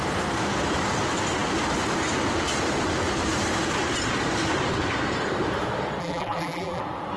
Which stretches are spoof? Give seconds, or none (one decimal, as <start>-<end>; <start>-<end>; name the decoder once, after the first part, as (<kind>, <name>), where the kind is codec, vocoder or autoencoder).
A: 6.0-6.8 (vocoder, BigVGAN v2)